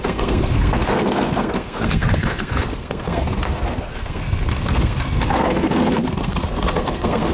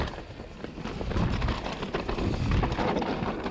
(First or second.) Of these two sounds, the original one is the second